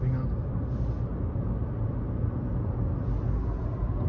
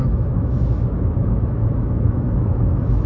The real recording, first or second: first